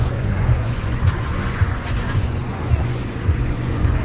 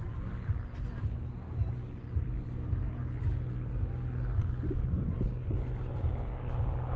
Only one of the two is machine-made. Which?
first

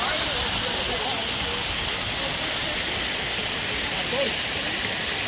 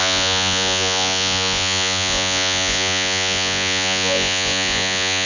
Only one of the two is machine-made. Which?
second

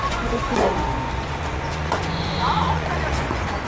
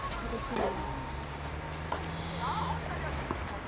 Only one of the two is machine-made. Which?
first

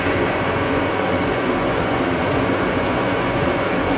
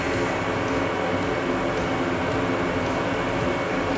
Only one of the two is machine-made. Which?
first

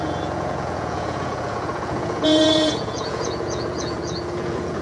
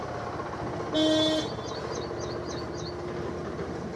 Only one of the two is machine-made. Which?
first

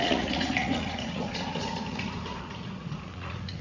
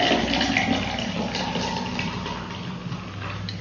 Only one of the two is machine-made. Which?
first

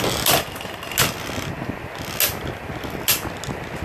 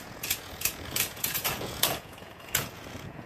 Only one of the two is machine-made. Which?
second